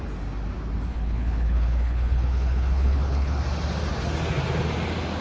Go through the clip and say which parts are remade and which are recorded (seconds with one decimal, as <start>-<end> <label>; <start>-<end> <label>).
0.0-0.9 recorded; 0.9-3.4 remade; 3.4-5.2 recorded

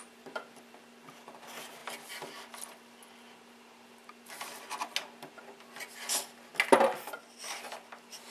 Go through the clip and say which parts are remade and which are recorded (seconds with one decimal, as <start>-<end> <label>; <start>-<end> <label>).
0.0-8.3 recorded

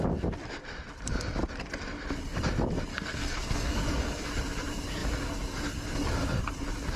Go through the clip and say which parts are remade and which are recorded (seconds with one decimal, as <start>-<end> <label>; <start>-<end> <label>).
0.0-2.9 recorded; 2.9-4.3 remade; 4.3-7.0 recorded

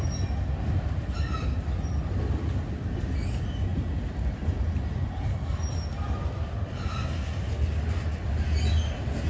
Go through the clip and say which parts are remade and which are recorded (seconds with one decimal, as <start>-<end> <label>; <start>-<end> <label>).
0.0-9.3 recorded

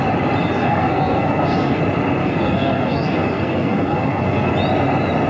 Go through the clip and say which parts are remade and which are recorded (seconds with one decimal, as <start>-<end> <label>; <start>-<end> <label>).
0.0-0.6 recorded; 0.6-1.8 remade; 1.8-2.2 recorded; 2.2-4.5 remade; 4.5-5.3 recorded

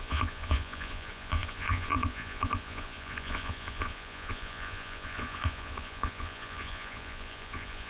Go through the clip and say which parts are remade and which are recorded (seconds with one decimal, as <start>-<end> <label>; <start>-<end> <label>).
0.0-7.9 remade

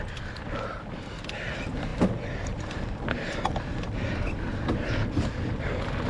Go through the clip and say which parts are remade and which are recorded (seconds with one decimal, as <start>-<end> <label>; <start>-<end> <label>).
0.0-6.1 recorded

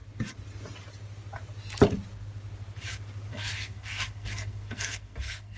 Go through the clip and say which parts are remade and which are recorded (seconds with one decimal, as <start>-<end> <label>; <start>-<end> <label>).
0.0-3.3 recorded; 3.3-5.6 remade